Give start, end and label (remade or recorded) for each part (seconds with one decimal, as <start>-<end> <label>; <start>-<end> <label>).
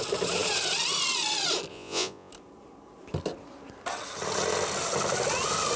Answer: 0.0-1.7 recorded; 1.7-2.3 remade; 2.3-5.8 recorded